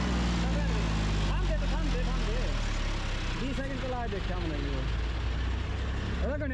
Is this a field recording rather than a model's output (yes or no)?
yes